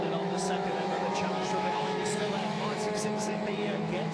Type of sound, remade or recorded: remade